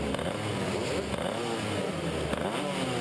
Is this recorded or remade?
recorded